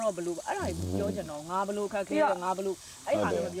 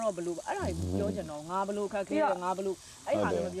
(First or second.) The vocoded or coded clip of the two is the first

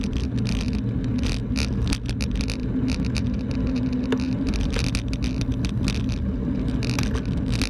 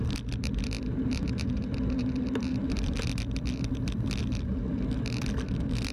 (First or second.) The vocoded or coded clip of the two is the second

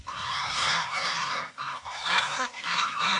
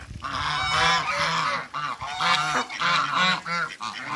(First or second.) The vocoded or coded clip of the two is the first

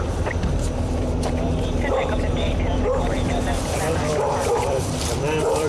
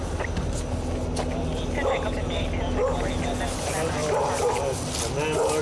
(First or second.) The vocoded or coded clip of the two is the first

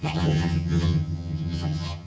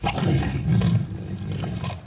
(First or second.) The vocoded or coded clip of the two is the first